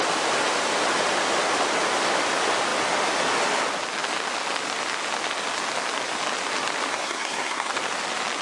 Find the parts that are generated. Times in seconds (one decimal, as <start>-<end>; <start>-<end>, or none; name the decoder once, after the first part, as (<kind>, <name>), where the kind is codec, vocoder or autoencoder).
6.9-7.7 (codec, SNAC)